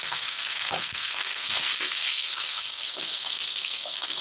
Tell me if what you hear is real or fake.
fake